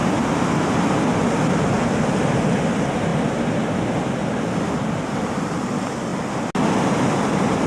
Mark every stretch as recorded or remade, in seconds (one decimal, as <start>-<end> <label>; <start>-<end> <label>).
0.0-7.7 recorded